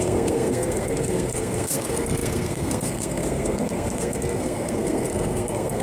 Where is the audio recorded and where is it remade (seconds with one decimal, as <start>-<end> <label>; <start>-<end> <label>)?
0.0-5.8 remade